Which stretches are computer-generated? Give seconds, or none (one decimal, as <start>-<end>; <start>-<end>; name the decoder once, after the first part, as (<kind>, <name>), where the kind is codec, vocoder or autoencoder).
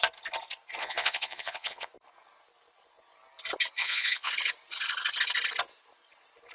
0.8-1.9 (vocoder, Vocos); 3.8-4.3